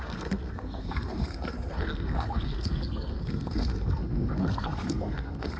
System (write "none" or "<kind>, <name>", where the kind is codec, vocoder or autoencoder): codec, SNAC